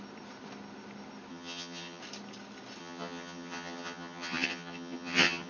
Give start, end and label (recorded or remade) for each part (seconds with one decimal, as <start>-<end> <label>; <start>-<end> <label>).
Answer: 0.0-1.3 recorded; 1.3-2.0 remade; 2.0-2.8 recorded; 2.8-5.5 remade